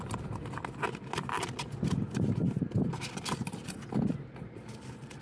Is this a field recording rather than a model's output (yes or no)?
yes